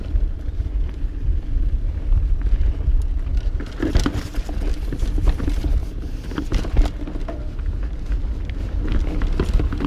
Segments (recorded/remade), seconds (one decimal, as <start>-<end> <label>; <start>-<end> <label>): 0.0-5.8 recorded; 5.8-6.7 remade; 6.7-7.4 recorded; 7.4-8.8 remade; 8.8-9.9 recorded

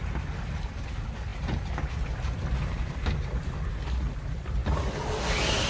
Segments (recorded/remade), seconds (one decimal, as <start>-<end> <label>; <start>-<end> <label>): 0.0-5.7 recorded

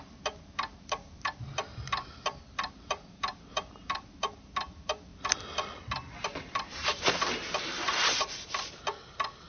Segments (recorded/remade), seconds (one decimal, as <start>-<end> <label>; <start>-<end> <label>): 0.0-1.7 remade; 1.7-2.7 recorded; 2.7-5.1 remade; 5.1-6.5 recorded; 6.5-9.5 remade

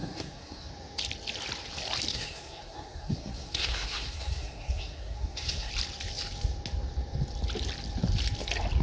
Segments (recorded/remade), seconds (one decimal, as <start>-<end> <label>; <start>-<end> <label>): 0.0-0.7 remade; 0.7-2.1 recorded; 2.1-5.7 remade; 5.7-8.8 recorded

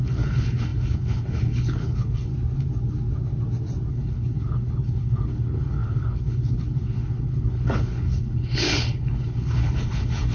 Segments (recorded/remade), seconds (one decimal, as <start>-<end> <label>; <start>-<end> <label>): 0.0-2.3 remade; 2.3-3.9 recorded; 3.9-10.3 remade

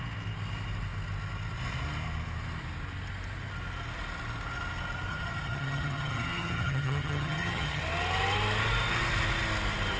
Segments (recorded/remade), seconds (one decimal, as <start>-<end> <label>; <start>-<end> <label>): 0.0-5.1 recorded; 5.1-7.8 remade; 7.8-10.0 recorded

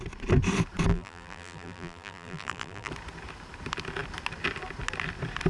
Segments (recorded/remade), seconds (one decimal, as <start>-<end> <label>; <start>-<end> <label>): 0.0-0.9 recorded; 0.9-2.9 remade; 2.9-5.5 recorded